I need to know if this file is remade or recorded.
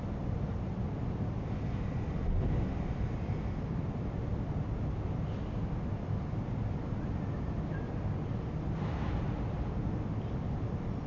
recorded